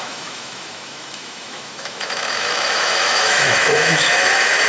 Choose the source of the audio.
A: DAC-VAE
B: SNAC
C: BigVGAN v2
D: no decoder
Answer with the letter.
A